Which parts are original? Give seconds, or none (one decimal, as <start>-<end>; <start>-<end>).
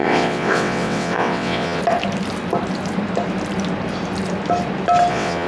1.8-5.1